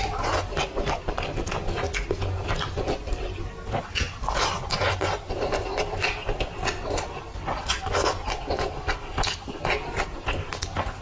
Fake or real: real